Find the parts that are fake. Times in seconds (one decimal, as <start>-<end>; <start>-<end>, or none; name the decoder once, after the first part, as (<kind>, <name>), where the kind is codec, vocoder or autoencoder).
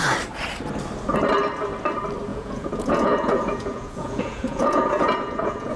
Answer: 2.3-5.8 (vocoder, Vocos)